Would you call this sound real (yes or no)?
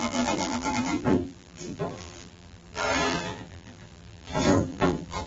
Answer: no